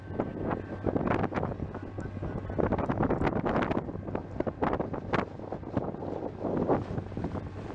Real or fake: real